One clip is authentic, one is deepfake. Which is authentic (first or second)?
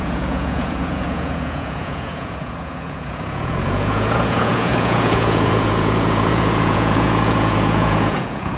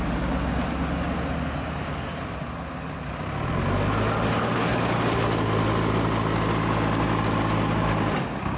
second